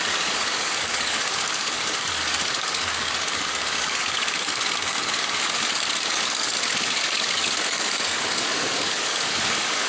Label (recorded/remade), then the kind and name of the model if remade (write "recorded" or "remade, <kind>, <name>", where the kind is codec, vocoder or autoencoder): remade, codec, DAC